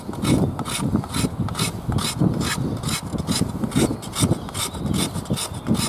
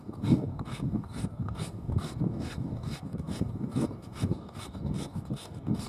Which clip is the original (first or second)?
first